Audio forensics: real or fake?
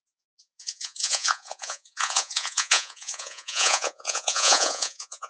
fake